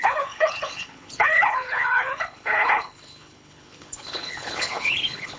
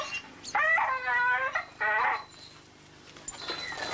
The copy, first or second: first